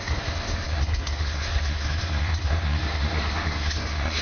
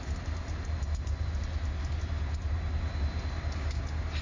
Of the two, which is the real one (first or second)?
second